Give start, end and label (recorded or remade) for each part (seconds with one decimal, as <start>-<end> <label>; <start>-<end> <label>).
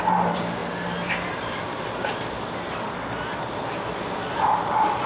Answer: 0.0-5.1 recorded